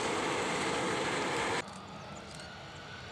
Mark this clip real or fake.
real